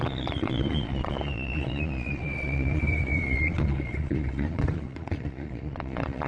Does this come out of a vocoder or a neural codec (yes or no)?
yes